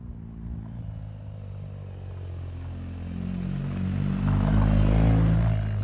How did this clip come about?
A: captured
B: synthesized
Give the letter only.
A